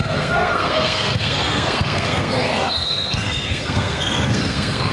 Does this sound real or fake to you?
fake